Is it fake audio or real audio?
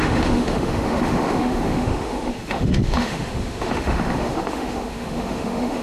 fake